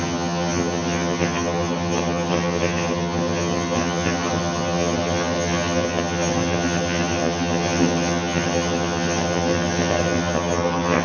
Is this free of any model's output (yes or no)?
no